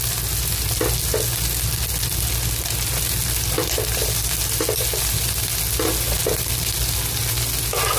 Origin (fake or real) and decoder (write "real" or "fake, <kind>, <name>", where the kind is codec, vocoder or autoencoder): real